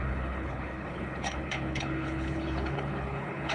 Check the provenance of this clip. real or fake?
fake